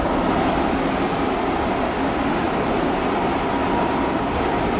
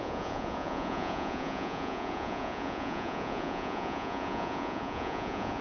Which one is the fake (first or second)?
second